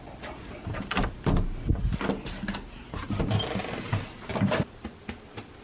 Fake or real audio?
real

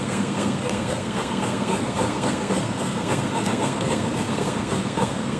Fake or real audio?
fake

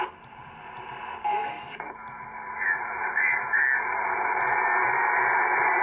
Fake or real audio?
real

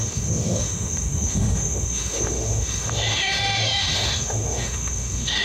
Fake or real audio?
fake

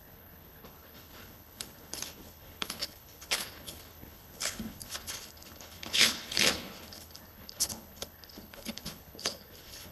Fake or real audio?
fake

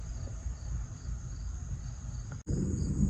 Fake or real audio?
fake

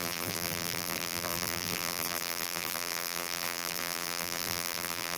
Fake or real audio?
fake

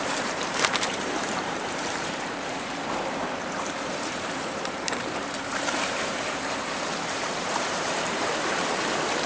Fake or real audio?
fake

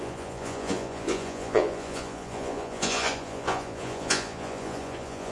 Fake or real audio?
fake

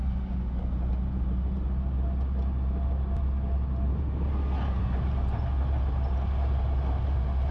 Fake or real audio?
real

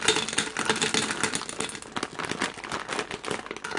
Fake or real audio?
real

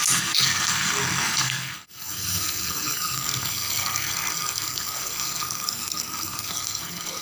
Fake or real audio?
fake